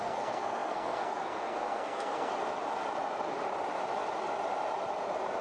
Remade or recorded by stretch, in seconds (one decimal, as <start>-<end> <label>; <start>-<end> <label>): 0.0-2.3 remade; 2.3-5.4 recorded